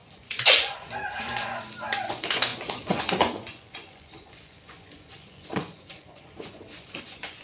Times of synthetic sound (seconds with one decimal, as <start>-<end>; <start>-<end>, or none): 0.0-7.4